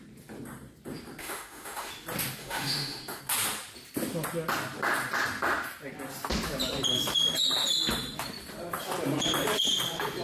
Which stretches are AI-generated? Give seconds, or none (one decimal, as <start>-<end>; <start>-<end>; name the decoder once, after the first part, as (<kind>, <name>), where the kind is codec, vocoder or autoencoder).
1.2-1.9 (autoencoder, DAC-VAE); 2.4-3.2